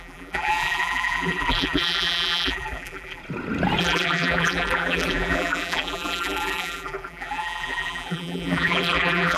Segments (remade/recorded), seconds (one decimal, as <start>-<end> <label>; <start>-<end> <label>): 0.0-3.2 remade; 3.2-3.8 recorded; 3.8-9.4 remade